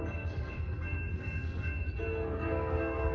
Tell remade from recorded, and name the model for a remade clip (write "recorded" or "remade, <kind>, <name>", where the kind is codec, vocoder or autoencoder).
remade, codec, SNAC